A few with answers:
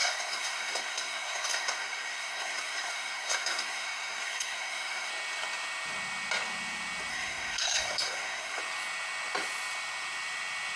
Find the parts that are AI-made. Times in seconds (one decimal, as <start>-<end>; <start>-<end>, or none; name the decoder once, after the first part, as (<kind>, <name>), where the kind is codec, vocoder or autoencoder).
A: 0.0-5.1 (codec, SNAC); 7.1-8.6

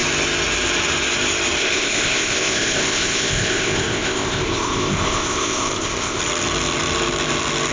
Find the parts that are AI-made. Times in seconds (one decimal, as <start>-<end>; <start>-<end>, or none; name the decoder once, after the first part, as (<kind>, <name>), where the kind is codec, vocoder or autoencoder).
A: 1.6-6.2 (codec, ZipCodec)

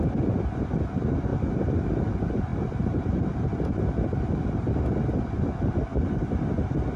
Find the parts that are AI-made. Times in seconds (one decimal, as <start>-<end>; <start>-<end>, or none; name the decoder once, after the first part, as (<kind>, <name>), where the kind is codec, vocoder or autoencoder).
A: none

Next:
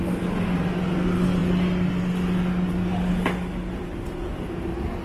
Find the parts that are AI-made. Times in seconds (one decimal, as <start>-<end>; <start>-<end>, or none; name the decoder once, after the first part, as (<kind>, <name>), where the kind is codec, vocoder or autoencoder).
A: none

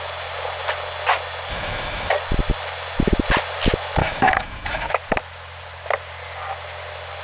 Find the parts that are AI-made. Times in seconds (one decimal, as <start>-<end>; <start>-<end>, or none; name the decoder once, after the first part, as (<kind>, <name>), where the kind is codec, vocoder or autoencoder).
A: 1.5-2.1 (autoencoder, DAC-VAE); 4.0-4.9